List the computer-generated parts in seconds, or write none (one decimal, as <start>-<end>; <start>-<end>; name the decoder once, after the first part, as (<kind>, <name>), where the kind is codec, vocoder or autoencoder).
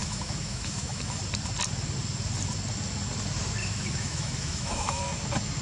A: 0.0-1.2 (autoencoder, DAC-VAE); 3.6-5.0